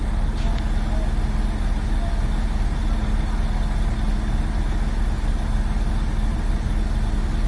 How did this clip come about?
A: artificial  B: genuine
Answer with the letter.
B